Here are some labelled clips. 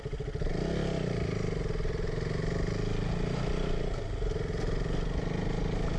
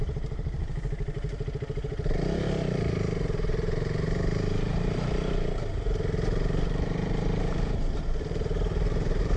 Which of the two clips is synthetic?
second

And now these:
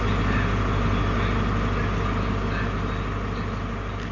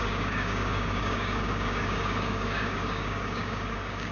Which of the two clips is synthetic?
second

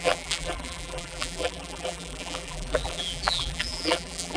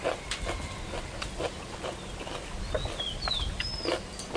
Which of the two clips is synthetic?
first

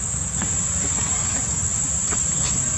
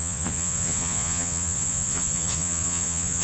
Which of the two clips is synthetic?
second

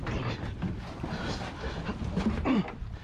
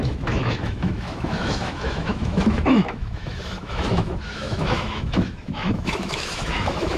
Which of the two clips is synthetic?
second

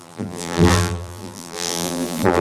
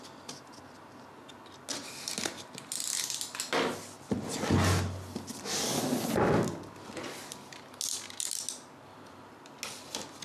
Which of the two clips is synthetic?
first